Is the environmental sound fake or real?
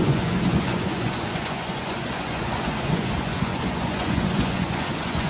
fake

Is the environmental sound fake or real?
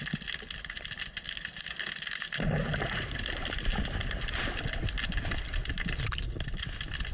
real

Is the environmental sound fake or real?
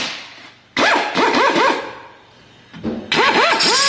real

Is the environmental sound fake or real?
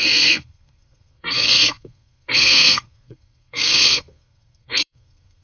fake